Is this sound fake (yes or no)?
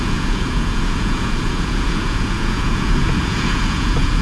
yes